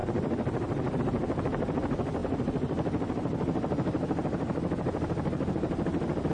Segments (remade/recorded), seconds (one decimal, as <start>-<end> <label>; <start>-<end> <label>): 0.0-6.3 recorded